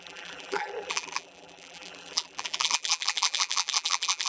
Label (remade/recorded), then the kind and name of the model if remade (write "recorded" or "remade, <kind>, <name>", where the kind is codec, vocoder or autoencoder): remade, vocoder, BigVGAN v2